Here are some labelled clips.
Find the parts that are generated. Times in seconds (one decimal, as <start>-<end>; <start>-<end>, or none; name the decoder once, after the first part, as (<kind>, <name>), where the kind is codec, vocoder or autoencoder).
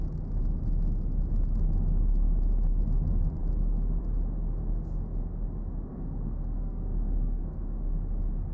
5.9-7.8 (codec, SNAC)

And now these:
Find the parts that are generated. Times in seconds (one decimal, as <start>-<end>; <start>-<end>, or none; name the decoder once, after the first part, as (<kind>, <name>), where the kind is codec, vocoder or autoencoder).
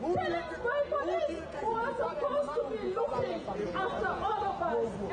1.3-4.4 (vocoder, Vocos)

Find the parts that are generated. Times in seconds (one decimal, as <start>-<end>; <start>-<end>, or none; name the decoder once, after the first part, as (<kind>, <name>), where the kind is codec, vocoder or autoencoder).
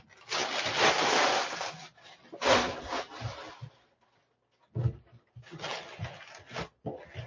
none